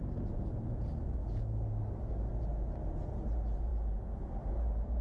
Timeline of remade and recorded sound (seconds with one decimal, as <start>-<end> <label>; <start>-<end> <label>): 0.0-1.2 recorded; 1.2-2.3 remade; 2.3-5.0 recorded